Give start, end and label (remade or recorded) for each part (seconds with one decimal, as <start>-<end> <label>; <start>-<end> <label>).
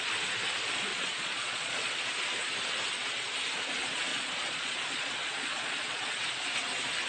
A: 0.0-0.9 recorded; 0.9-1.9 remade; 1.9-4.1 recorded; 4.1-6.0 remade; 6.0-7.1 recorded